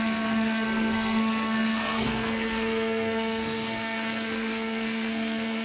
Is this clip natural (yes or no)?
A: no